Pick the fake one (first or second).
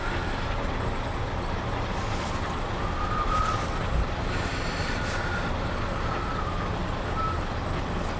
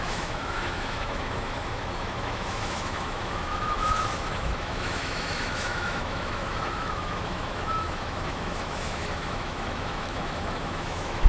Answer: second